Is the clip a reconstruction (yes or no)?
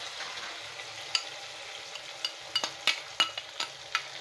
no